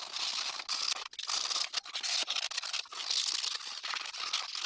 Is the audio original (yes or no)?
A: yes